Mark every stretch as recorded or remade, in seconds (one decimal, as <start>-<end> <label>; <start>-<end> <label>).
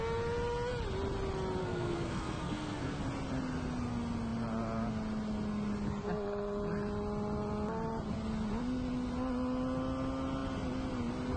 0.0-1.6 recorded; 1.6-3.0 remade; 3.0-11.4 recorded